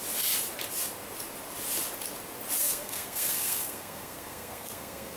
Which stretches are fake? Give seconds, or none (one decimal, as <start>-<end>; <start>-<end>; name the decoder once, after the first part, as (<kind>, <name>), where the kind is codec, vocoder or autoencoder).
2.6-5.2 (codec, SNAC)